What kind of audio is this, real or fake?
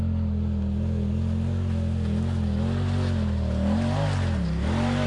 real